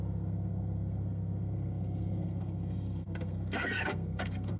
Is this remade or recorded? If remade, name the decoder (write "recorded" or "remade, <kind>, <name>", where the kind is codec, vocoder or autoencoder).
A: remade, codec, SNAC